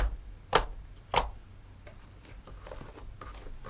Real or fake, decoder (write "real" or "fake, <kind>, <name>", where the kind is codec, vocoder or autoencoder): real